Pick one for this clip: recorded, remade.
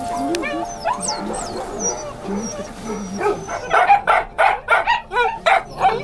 recorded